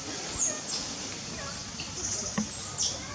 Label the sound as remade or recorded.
recorded